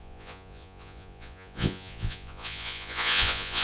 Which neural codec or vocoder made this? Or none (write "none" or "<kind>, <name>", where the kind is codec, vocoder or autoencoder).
vocoder, Vocos